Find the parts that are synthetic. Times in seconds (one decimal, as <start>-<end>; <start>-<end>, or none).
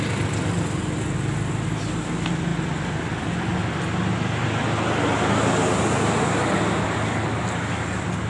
none